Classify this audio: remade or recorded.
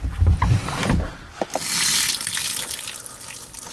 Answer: recorded